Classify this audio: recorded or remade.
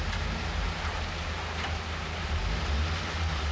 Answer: recorded